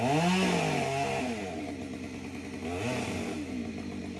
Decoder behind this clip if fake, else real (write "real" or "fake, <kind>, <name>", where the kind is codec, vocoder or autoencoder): real